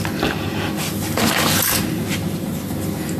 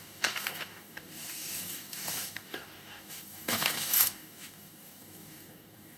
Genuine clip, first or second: first